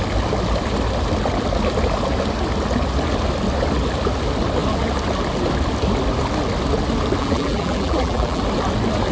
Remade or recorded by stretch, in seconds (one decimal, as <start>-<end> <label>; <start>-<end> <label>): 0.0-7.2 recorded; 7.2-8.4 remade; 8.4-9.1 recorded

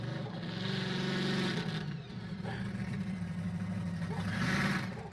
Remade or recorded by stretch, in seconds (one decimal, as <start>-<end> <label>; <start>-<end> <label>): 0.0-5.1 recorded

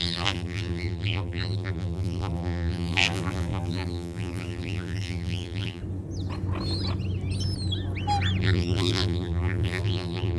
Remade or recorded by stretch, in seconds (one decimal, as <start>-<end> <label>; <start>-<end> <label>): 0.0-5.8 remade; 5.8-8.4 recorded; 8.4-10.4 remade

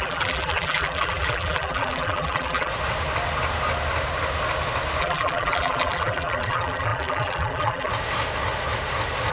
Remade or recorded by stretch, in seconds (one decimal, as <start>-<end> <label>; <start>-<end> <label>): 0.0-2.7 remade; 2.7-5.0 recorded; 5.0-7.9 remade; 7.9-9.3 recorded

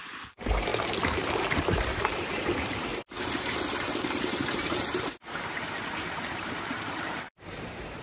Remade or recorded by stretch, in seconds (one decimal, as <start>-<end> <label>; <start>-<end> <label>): 0.0-0.7 remade; 0.7-1.4 recorded; 1.4-2.9 remade; 2.9-3.4 recorded; 3.4-8.0 remade

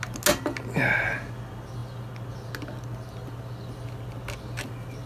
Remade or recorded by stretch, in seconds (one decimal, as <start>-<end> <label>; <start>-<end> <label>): 0.0-5.1 recorded

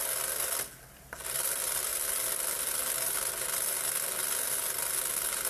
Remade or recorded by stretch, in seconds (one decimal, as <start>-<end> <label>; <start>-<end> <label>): 0.0-5.5 recorded